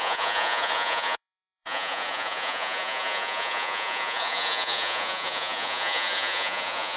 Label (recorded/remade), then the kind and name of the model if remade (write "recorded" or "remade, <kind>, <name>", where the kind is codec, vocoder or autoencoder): remade, vocoder, Vocos